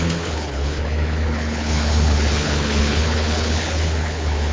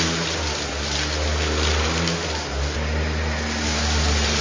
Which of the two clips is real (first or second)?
second